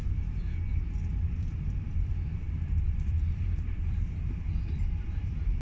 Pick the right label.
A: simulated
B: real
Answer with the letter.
A